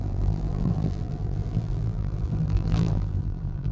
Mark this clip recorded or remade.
remade